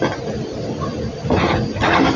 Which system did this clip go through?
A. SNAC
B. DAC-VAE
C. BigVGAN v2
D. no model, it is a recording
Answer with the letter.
D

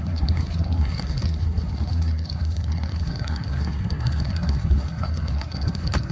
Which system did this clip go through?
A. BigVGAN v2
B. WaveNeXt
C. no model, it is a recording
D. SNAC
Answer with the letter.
D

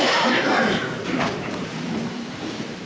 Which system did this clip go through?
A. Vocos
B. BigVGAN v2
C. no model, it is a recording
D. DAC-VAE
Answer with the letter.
B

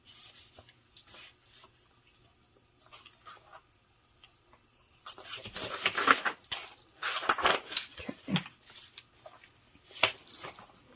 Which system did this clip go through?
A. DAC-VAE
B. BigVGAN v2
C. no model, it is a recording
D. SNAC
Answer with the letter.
B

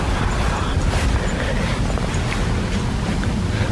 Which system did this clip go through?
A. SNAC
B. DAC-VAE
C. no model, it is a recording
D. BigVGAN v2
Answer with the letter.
C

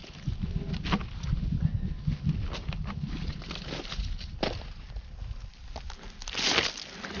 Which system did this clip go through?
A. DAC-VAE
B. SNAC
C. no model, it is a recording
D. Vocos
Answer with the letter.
C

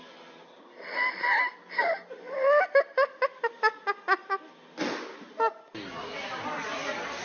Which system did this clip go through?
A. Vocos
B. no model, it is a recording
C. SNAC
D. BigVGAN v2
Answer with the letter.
B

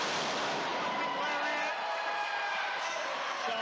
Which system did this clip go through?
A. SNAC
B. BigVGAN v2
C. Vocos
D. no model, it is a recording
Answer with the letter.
D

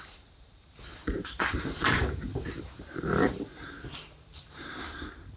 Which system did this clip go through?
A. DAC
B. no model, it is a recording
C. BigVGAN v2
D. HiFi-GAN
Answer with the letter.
C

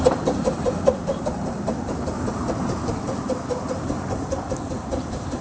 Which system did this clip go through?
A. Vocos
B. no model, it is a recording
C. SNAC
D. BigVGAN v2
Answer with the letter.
D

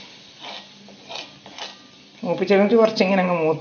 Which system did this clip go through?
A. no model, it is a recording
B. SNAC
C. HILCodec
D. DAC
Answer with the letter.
A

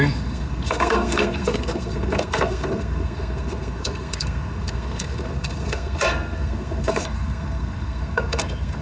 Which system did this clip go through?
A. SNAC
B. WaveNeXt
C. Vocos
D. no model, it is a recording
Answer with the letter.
A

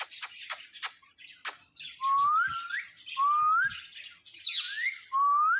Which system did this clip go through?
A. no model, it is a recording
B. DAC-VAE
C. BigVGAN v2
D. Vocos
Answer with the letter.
A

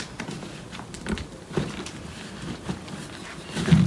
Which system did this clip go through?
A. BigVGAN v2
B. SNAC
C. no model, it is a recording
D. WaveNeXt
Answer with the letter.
A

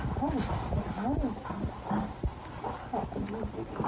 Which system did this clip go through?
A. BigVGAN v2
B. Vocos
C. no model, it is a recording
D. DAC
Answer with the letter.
C